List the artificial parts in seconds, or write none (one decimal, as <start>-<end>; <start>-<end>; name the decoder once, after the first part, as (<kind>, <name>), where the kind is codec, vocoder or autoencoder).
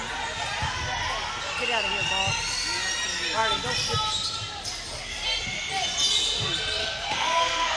6.8-7.8 (codec, SNAC)